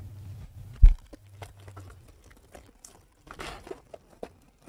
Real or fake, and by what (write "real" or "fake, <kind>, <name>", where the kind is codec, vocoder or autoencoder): real